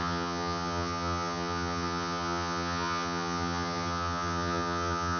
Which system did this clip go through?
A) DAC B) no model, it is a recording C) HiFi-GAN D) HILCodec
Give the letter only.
C